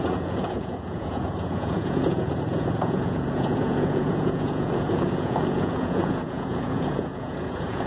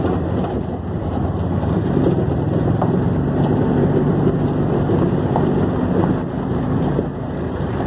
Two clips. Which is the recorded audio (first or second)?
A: second